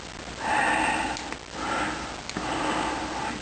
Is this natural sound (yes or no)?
yes